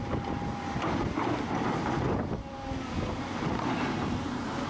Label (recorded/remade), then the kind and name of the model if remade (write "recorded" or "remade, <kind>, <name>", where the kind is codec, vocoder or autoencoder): recorded